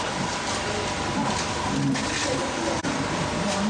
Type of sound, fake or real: real